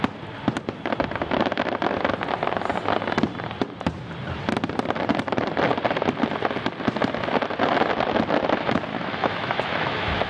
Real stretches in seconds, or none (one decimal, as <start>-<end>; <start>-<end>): 0.0-8.9